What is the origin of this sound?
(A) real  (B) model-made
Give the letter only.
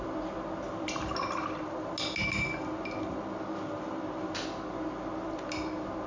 A